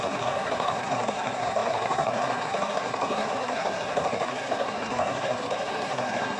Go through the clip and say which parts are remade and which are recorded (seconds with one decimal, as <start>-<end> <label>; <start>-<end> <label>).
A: 0.0-6.4 remade